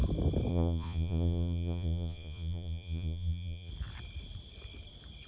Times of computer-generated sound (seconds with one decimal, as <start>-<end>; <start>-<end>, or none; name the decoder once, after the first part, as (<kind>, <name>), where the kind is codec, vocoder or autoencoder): 0.5-3.7 (vocoder, Vocos)